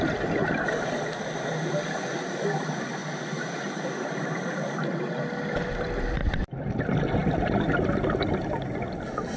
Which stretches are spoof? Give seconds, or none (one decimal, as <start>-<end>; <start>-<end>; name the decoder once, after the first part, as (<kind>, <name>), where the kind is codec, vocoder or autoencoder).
none